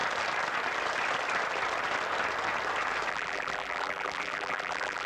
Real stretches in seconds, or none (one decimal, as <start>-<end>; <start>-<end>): 0.0-3.1